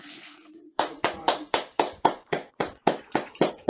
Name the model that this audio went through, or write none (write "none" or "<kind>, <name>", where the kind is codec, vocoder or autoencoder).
vocoder, Vocos